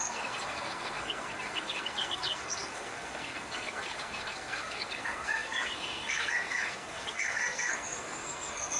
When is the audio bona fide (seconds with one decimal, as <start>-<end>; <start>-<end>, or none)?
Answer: none